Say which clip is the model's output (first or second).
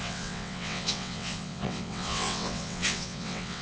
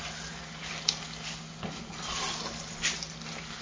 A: first